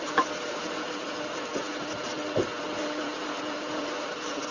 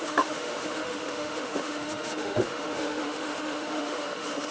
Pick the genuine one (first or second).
first